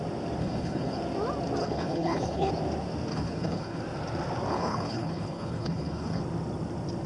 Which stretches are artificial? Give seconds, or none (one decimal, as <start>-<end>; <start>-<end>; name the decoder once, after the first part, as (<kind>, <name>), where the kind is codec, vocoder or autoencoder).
0.4-1.0 (codec, HILCodec); 1.6-2.5; 3.1-3.8; 4.5-6.2